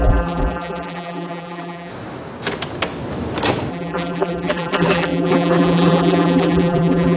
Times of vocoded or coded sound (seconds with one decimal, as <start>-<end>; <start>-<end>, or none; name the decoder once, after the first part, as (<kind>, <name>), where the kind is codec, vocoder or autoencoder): 0.0-1.9 (vocoder, BigVGAN v2); 3.7-7.2